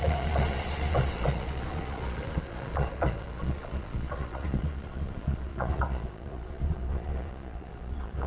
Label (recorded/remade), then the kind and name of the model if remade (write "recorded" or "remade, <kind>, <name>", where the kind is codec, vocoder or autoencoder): remade, vocoder, Vocos